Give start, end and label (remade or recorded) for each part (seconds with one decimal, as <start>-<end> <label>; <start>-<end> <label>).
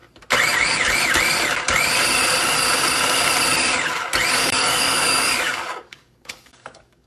0.0-4.3 recorded; 4.3-7.1 remade